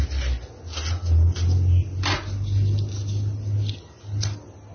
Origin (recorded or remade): recorded